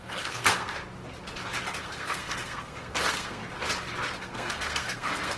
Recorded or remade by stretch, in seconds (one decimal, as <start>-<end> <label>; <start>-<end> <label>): 0.0-0.7 remade; 0.7-1.8 recorded; 1.8-3.4 remade; 3.4-4.2 recorded; 4.2-5.4 remade